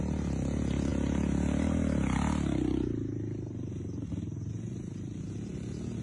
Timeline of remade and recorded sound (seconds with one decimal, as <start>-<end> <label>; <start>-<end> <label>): 0.0-6.0 recorded